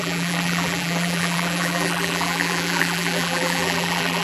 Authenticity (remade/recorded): remade